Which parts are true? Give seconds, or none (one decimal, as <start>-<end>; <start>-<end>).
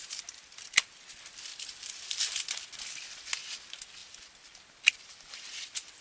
0.0-1.5; 2.8-4.0; 5.5-6.0